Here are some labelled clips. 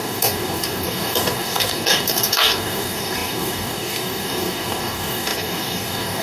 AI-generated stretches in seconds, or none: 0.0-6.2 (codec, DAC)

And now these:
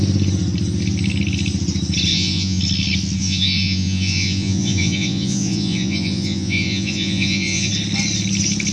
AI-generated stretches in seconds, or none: 2.1-2.6 (vocoder, Vocos); 3.2-7.7

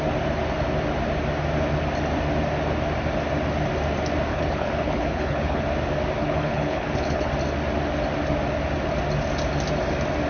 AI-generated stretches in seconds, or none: 4.3-5.6 (codec, HILCodec); 6.2-7.3

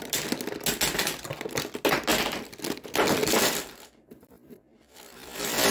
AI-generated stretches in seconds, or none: 3.2-5.7 (vocoder, BigVGAN v2)

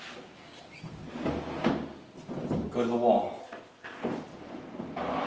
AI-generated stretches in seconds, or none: 3.4-4.1 (codec, ZipCodec)

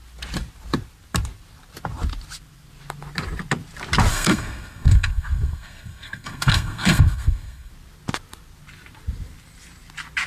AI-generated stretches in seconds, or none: 4.1-7.7 (codec, SNAC)